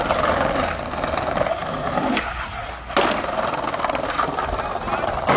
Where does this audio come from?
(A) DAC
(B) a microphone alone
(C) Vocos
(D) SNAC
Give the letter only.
B